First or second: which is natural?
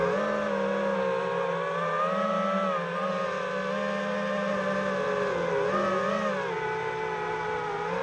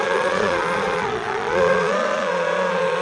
first